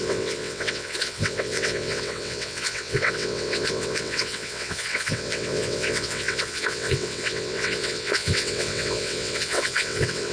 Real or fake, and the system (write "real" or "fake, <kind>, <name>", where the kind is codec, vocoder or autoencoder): fake, vocoder, WaveNeXt